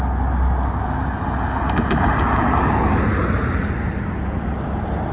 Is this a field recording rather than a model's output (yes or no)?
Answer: yes